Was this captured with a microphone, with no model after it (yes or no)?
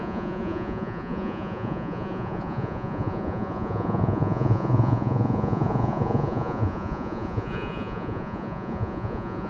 no